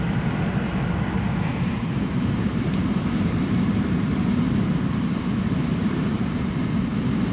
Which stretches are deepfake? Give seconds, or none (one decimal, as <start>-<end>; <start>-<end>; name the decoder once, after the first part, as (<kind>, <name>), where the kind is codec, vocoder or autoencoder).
1.5-4.4 (vocoder, BigVGAN v2); 5.7-6.6